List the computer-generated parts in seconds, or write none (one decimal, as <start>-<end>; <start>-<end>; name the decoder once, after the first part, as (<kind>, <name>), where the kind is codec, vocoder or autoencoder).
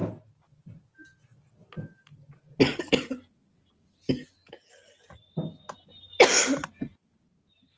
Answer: none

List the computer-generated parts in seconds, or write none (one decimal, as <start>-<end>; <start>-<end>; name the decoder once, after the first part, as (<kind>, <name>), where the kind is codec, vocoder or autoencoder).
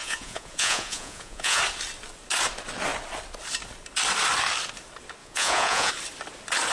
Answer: 0.0-1.6 (vocoder, Vocos); 5.2-5.9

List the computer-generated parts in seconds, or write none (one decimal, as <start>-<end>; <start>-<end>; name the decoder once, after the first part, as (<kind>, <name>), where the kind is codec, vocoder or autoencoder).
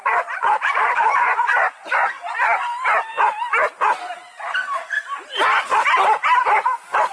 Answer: 0.0-2.7 (vocoder, Vocos)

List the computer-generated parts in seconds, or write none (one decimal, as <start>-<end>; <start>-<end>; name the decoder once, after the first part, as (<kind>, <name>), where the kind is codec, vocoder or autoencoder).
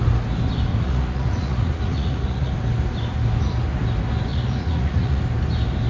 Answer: 0.7-2.5 (vocoder, Vocos); 4.3-5.2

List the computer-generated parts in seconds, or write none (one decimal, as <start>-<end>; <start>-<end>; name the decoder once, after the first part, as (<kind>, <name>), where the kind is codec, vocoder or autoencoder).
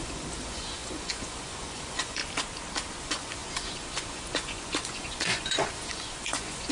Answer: 0.0-2.2 (vocoder, Vocos); 3.0-6.7